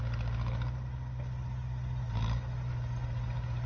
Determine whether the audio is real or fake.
real